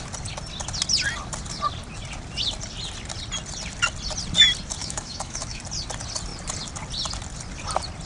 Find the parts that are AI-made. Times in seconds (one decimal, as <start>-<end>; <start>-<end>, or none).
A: 4.8-5.6